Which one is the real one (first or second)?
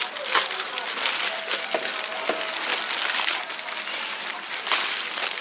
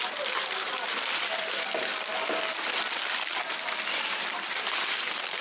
first